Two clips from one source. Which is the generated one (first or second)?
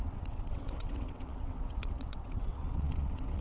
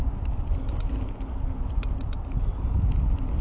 first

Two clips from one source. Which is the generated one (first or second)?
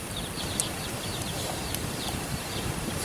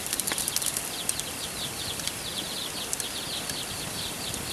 first